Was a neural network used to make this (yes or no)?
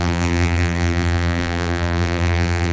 yes